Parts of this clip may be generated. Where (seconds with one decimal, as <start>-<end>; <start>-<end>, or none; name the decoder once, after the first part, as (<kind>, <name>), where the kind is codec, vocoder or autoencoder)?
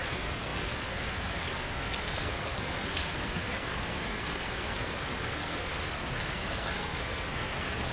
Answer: 0.0-7.9 (codec, SNAC)